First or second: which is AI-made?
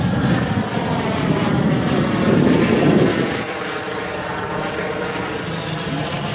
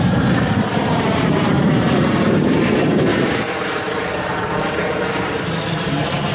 second